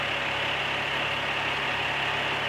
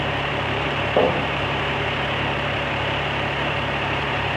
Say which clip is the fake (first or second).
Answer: second